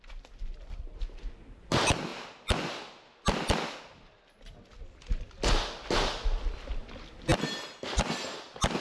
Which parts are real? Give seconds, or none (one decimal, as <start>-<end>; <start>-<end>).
0.0-8.8